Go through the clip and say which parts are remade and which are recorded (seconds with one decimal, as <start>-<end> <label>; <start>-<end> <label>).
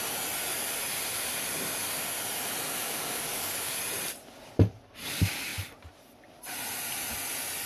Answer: 0.0-2.8 recorded; 2.8-3.7 remade; 3.7-7.7 recorded